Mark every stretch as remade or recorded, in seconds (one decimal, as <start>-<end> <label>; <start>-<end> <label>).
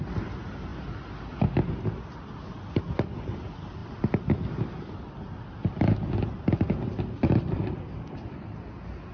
0.0-9.1 recorded